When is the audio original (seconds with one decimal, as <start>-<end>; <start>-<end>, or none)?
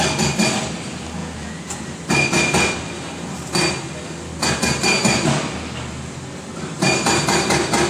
0.0-1.2; 1.8-7.9